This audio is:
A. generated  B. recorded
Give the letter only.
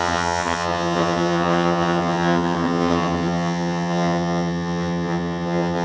A